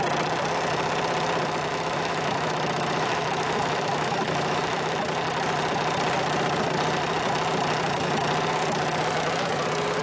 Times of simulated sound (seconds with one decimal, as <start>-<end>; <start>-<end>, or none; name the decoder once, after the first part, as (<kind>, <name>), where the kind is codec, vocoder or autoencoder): 1.7-5.0 (autoencoder, DAC-VAE)